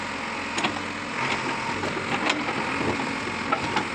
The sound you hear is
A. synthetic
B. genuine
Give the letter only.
B